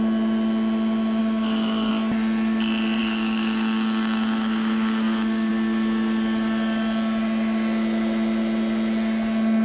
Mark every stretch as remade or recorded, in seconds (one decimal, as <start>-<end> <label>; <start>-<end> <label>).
0.0-1.2 recorded; 1.2-1.9 remade; 1.9-3.0 recorded; 3.0-5.5 remade; 5.5-9.6 recorded